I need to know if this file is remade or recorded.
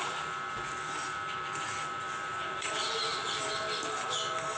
remade